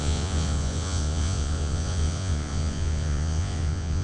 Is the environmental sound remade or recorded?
remade